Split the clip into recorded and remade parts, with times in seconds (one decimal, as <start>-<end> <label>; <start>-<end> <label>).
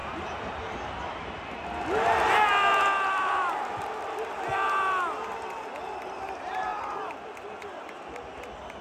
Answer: 0.0-8.8 recorded